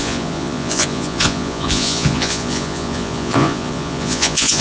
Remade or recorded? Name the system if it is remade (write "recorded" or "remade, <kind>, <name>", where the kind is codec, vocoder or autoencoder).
remade, vocoder, Vocos